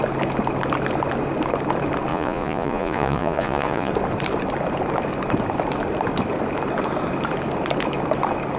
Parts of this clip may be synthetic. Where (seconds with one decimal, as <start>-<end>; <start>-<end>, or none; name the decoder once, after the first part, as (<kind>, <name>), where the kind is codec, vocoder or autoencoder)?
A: 2.1-3.9 (vocoder, Vocos)

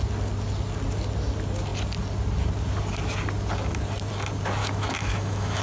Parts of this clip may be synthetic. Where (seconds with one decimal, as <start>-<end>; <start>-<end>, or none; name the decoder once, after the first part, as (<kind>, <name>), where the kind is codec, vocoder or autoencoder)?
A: 4.6-5.6 (autoencoder, DAC-VAE)

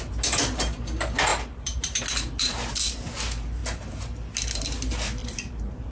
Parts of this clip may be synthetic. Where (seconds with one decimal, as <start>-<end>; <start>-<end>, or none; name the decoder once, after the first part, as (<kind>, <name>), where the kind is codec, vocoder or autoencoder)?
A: 1.3-2.0 (vocoder, BigVGAN v2); 5.2-5.9

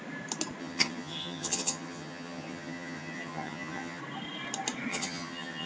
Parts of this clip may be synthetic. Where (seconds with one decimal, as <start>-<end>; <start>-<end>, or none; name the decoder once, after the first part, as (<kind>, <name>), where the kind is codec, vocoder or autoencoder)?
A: 0.6-4.0 (vocoder, HiFi-GAN); 4.9-5.7

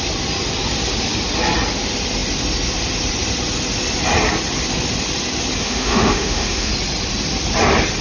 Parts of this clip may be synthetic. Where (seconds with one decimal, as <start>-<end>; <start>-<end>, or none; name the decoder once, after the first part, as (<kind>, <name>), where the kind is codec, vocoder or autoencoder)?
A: 5.6-6.7 (autoencoder, DAC-VAE)

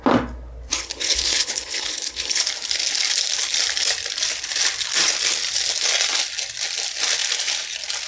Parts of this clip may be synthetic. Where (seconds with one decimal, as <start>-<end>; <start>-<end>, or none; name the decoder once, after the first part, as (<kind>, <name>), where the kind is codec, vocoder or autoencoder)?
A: 0.7-2.4 (codec, HILCodec)

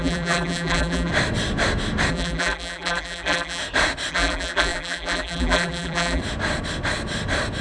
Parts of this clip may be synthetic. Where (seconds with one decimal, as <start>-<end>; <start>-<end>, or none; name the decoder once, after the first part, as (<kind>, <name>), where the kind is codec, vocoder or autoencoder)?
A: 0.0-1.1 (vocoder, BigVGAN v2); 2.1-3.6; 4.1-6.2